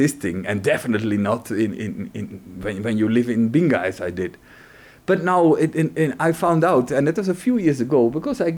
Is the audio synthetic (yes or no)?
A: no